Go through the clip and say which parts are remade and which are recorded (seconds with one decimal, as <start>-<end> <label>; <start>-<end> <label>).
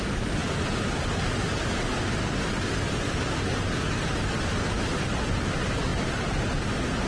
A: 0.0-7.1 recorded